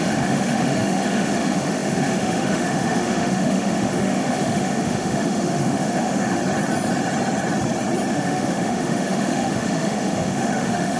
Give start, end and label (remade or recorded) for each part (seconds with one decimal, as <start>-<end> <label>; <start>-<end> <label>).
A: 0.0-6.4 remade; 6.4-8.1 recorded; 8.1-11.0 remade